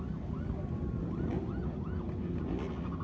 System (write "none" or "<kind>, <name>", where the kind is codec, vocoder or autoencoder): none